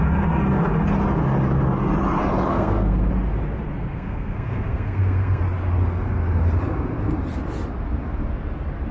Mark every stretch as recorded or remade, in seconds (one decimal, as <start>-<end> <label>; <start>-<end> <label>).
0.0-2.5 recorded; 2.5-3.1 remade; 3.1-3.8 recorded; 3.8-5.4 remade; 5.4-8.9 recorded